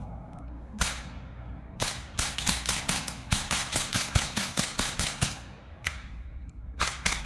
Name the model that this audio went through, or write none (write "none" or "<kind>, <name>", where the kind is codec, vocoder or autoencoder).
codec, SNAC